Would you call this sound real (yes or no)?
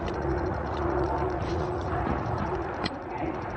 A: no